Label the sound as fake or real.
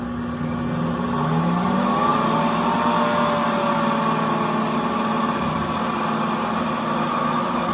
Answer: real